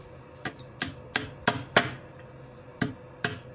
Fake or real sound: real